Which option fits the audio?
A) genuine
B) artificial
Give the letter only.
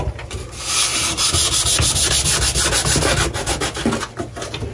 A